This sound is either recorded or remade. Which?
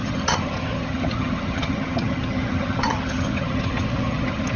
remade